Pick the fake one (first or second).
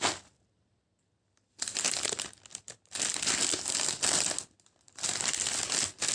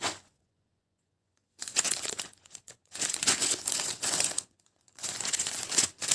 second